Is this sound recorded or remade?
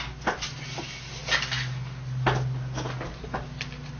recorded